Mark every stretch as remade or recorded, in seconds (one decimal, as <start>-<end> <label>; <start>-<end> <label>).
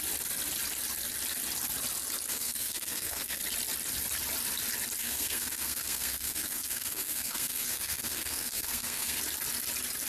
0.0-2.3 recorded; 2.3-3.4 remade; 3.4-5.0 recorded; 5.0-9.2 remade; 9.2-10.1 recorded